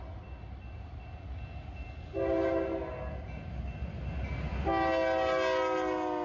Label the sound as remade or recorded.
recorded